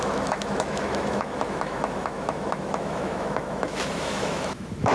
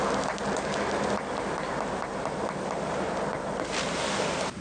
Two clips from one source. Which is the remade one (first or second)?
first